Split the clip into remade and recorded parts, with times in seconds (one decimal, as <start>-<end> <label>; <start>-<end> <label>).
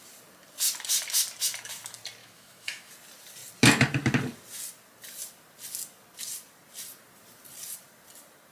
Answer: 0.0-2.2 recorded; 2.2-2.9 remade; 2.9-8.5 recorded